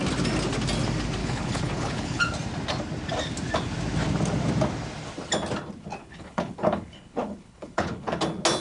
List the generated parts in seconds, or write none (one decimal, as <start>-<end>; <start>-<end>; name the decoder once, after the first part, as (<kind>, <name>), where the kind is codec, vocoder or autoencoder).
1.2-2.2 (codec, HILCodec); 6.0-8.2